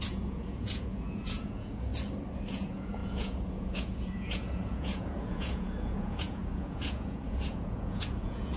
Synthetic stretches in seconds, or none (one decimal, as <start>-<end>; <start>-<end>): 0.0-1.9; 2.5-8.6